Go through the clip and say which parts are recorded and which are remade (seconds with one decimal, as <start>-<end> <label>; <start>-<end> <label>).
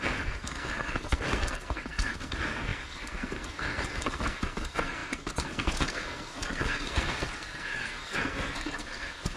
0.0-9.4 remade